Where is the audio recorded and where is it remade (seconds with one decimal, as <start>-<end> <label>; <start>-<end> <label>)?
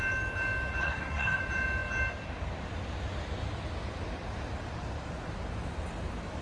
0.0-0.8 recorded; 0.8-1.4 remade; 1.4-6.4 recorded